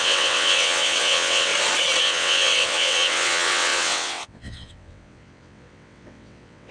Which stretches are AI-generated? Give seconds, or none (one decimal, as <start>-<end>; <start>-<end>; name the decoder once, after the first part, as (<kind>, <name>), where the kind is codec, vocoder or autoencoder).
0.0-1.5 (vocoder, WaveNeXt); 2.0-6.7